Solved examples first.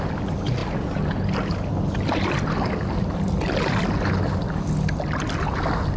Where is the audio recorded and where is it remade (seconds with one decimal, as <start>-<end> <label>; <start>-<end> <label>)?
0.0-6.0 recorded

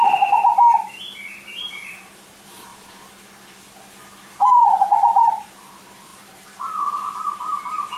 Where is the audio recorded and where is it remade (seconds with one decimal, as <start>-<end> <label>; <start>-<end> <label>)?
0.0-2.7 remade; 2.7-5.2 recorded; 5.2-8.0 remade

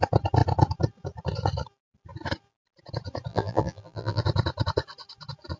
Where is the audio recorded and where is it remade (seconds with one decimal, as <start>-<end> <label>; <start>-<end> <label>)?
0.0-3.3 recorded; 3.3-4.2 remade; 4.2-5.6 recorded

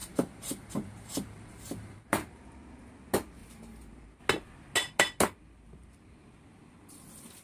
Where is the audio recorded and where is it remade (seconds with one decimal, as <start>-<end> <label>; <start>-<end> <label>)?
0.0-2.4 remade; 2.4-3.4 recorded; 3.4-4.2 remade; 4.2-7.4 recorded